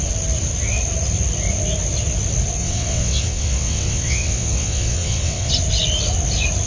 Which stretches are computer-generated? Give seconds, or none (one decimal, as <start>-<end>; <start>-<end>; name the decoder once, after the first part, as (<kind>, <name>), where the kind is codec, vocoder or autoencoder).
2.6-5.5 (vocoder, WaveNeXt)